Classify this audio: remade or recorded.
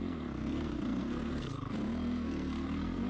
remade